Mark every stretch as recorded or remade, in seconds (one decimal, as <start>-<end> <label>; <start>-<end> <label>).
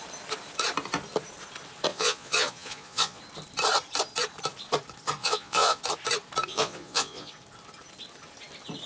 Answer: 0.0-1.9 recorded; 1.9-3.2 remade; 3.2-5.2 recorded; 5.2-5.8 remade; 5.8-6.5 recorded; 6.5-7.3 remade; 7.3-8.9 recorded